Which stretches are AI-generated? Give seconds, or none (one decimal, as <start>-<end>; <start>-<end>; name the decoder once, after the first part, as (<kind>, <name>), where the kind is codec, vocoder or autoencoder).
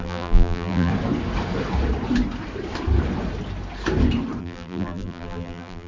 0.0-0.9 (vocoder, BigVGAN v2); 4.4-5.9